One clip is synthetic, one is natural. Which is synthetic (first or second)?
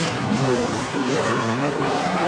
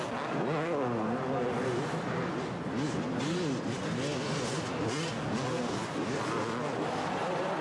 first